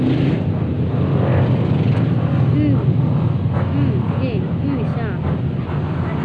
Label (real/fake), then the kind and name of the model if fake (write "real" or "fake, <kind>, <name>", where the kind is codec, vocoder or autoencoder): real